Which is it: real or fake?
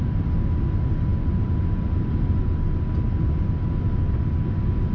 real